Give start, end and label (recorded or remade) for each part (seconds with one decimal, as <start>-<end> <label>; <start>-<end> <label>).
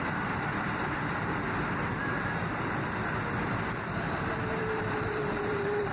0.0-0.5 remade; 0.5-4.0 recorded; 4.0-5.9 remade